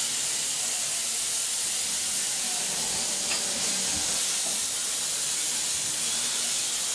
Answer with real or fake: real